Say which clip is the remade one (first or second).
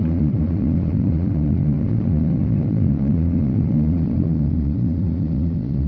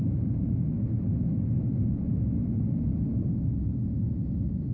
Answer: first